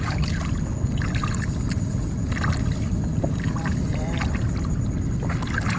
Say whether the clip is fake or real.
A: real